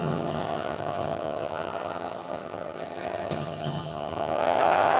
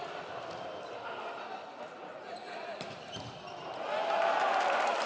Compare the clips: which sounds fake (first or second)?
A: first